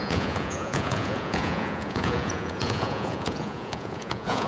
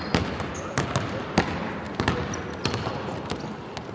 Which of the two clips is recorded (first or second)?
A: second